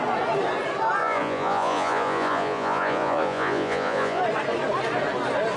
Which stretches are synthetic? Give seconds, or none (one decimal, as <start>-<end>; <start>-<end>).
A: 1.0-4.2